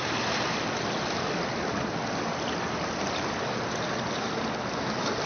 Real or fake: real